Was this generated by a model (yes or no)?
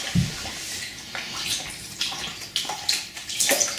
yes